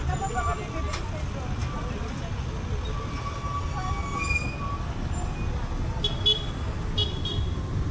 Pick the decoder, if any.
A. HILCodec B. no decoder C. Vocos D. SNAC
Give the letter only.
B